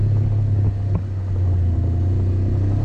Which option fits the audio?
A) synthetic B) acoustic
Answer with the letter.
B